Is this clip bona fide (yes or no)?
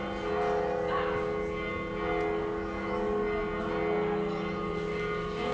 yes